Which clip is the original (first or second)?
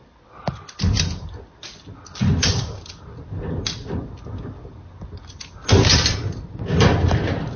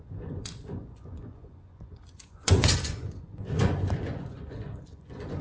first